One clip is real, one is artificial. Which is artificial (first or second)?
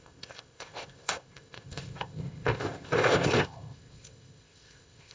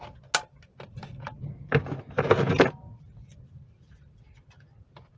first